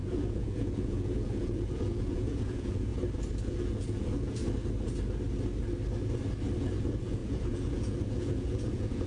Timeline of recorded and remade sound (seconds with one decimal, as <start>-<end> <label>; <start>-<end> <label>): 0.0-2.9 remade; 2.9-3.4 recorded; 3.4-4.4 remade; 4.4-6.6 recorded; 6.6-9.1 remade